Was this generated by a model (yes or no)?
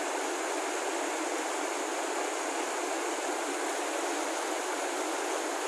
no